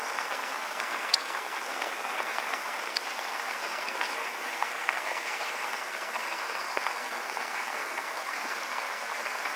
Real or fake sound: fake